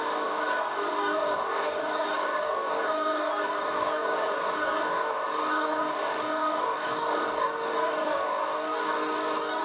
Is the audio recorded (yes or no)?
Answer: no